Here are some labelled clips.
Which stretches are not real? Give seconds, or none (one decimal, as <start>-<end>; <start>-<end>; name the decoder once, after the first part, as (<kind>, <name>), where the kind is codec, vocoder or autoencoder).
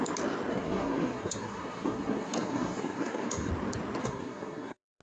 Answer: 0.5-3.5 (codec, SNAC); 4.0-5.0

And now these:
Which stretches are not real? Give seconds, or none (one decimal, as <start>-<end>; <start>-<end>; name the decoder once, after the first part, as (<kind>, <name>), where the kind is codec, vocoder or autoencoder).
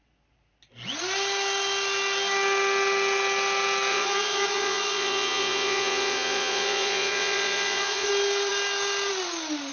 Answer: 3.9-8.1 (vocoder, Vocos)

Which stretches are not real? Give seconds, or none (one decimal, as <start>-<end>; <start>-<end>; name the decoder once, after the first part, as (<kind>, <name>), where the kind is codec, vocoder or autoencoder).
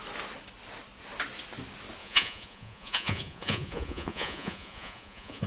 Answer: 2.0-5.5 (vocoder, Vocos)